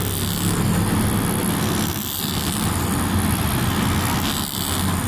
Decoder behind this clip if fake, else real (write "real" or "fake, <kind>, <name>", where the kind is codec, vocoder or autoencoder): real